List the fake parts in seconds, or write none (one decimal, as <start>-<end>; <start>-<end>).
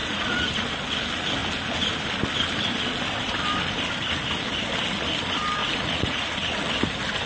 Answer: 0.0-0.5; 5.6-6.3